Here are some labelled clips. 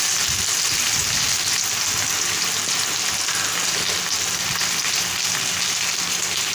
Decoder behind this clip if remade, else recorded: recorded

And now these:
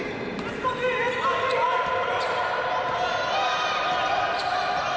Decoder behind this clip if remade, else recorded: recorded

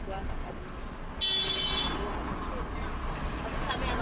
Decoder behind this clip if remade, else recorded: recorded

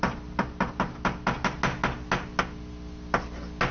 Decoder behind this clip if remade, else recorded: recorded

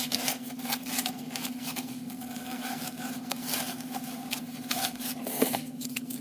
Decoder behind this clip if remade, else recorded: remade, codec, SNAC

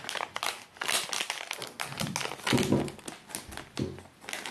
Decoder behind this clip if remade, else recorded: recorded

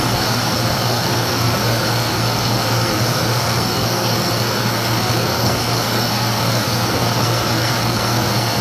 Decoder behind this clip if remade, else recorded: remade, codec, SNAC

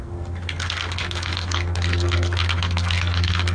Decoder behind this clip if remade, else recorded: remade, codec, SNAC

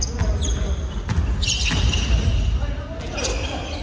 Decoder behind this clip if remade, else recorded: recorded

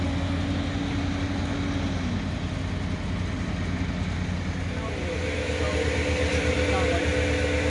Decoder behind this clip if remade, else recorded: recorded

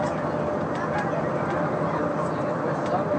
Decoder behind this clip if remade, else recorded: recorded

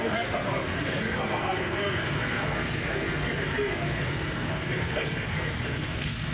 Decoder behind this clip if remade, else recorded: remade, codec, SNAC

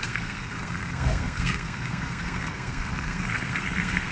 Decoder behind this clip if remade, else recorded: remade, codec, SNAC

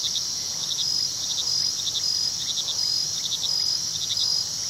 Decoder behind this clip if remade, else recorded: recorded